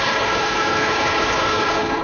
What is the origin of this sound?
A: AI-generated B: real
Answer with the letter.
A